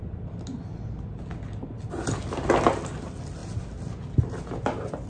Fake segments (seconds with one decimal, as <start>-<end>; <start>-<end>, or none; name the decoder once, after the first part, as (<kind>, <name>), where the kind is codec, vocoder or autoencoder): none